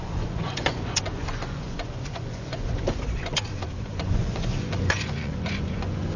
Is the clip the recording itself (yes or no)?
no